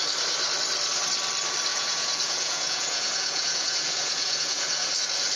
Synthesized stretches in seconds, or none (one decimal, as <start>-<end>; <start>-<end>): 1.7-4.9